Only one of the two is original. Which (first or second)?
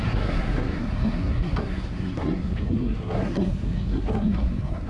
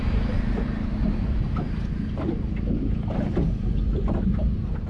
second